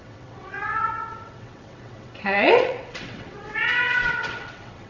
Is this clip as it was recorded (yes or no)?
no